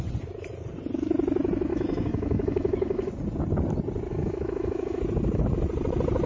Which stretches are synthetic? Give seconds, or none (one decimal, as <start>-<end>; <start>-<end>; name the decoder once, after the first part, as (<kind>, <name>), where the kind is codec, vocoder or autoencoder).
1.7-3.1 (autoencoder, DAC-VAE); 4.1-5.0